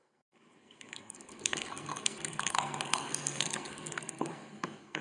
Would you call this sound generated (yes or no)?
yes